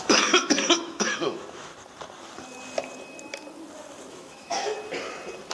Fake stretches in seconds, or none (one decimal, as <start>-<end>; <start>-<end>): 0.0-1.7; 4.1-4.7